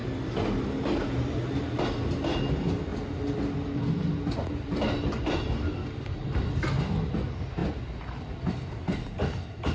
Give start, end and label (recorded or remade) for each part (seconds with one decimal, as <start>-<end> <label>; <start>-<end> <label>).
0.0-9.7 recorded